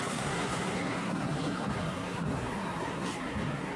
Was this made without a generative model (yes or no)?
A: no